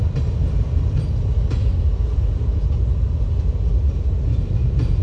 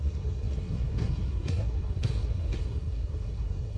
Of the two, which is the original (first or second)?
first